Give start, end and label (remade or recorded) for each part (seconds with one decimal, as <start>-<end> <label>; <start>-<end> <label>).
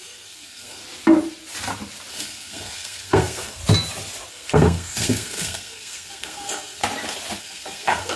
0.0-0.8 remade; 0.8-2.1 recorded; 2.1-3.6 remade; 3.6-4.3 recorded; 4.3-6.8 remade; 6.8-7.4 recorded; 7.4-8.2 remade